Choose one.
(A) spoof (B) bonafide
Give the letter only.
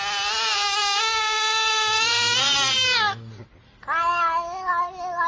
B